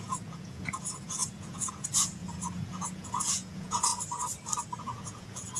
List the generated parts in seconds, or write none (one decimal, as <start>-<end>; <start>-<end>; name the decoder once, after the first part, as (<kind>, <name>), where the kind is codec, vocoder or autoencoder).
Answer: 0.0-3.9 (vocoder, Vocos); 4.8-5.6